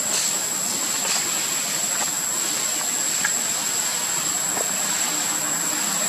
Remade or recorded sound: recorded